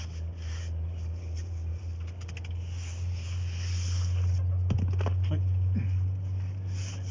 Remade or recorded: recorded